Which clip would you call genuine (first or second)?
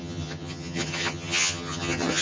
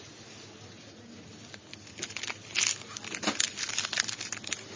second